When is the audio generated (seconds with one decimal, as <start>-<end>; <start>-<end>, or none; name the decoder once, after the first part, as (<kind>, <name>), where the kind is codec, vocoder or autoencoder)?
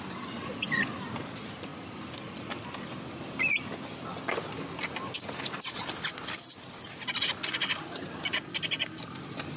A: none